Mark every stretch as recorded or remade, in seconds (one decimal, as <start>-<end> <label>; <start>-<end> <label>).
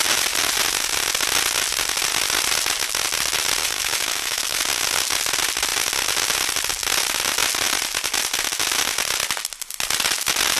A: 0.0-3.6 recorded; 3.6-4.6 remade; 4.6-10.6 recorded